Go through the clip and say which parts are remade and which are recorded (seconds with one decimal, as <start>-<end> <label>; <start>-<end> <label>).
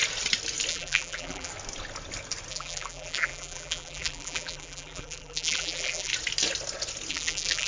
0.0-0.7 recorded; 0.7-1.5 remade; 1.5-2.5 recorded; 2.5-6.1 remade; 6.1-7.1 recorded; 7.1-7.7 remade